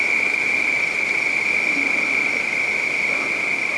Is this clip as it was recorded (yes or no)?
yes